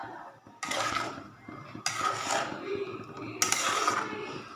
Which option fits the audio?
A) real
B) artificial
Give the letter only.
A